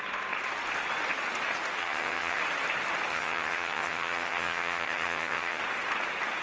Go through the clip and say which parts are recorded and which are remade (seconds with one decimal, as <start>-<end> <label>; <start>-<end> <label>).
0.0-1.8 recorded; 1.8-2.4 remade; 2.4-3.1 recorded; 3.1-5.6 remade; 5.6-6.4 recorded